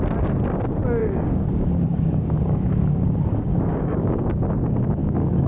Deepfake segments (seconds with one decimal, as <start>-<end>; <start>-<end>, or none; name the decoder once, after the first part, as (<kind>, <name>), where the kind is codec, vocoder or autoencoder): 1.0-4.3 (codec, DAC); 5.0-5.5